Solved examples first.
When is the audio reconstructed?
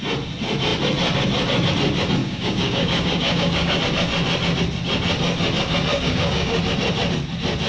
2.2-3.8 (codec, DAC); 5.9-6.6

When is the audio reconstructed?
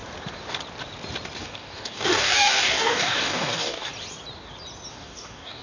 1.4-3.9 (codec, DAC); 4.9-5.6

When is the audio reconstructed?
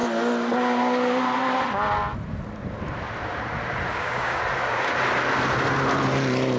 3.9-4.4 (codec, DAC)